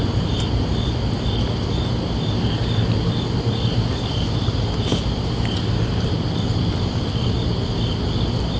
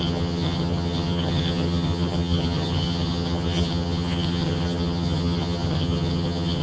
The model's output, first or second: second